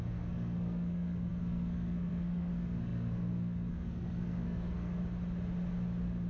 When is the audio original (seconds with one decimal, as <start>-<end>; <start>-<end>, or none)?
5.0-6.3